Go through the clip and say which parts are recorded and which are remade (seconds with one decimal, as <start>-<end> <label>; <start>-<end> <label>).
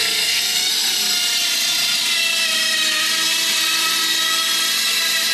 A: 0.0-0.7 remade; 0.7-5.3 recorded